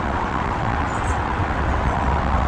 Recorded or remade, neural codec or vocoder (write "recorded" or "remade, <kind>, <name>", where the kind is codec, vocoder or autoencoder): remade, vocoder, WaveNeXt